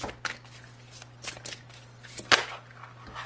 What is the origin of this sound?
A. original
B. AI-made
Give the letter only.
A